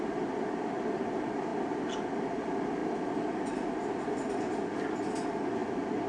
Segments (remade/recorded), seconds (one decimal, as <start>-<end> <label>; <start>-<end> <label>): 0.0-6.1 recorded